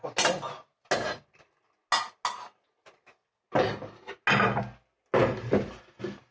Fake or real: real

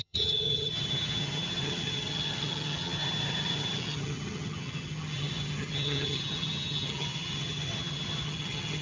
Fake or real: fake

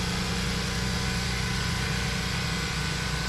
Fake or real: fake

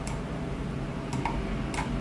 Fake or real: real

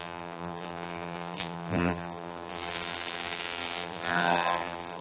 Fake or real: fake